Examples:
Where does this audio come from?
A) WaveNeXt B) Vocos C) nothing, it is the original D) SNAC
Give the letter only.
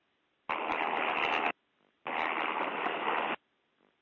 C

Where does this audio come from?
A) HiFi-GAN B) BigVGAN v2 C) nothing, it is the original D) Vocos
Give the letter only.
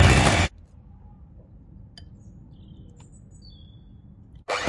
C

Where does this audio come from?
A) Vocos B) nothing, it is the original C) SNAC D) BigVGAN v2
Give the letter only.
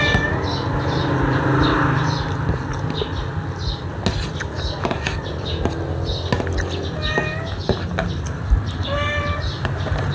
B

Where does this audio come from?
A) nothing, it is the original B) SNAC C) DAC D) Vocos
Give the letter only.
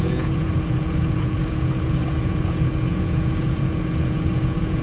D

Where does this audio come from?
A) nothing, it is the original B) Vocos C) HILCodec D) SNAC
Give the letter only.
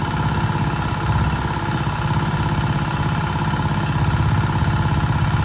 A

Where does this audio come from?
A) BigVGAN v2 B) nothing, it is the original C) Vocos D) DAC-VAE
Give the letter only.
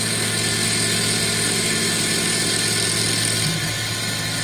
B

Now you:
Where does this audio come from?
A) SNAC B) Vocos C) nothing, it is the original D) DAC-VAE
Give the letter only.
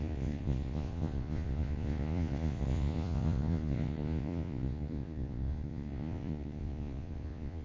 B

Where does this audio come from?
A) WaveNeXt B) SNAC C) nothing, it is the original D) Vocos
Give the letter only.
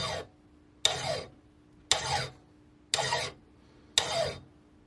C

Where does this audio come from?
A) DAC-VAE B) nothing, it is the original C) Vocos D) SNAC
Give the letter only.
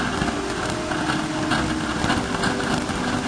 B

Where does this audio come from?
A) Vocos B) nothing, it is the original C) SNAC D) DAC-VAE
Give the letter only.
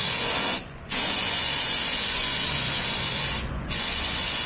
A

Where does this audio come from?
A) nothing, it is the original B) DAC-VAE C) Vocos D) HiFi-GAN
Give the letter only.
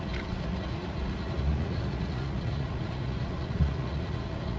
C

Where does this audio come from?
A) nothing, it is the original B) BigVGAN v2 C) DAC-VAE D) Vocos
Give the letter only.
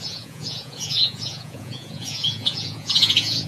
D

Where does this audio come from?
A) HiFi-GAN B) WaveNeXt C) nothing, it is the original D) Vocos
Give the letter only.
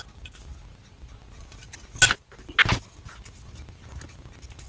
C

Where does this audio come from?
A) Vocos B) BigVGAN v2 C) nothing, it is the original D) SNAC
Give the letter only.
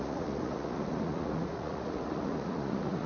A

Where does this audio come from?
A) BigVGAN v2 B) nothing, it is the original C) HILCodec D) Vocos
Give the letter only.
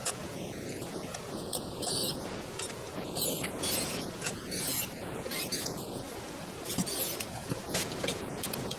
D